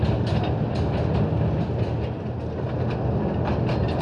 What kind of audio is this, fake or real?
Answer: real